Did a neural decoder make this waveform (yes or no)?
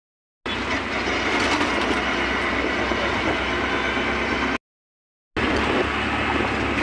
no